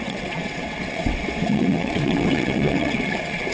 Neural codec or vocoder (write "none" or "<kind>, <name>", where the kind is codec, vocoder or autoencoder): vocoder, WaveNeXt